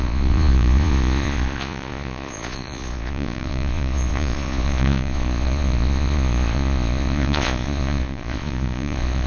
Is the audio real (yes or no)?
no